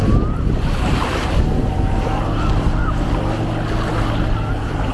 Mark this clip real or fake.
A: real